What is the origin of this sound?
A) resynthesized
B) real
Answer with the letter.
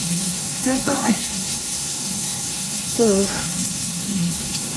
A